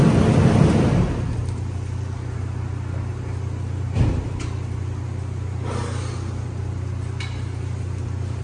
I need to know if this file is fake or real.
real